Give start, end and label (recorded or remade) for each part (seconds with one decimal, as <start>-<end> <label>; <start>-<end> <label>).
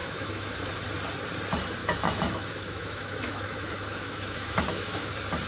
0.0-0.7 remade; 0.7-1.8 recorded; 1.8-5.1 remade; 5.1-5.5 recorded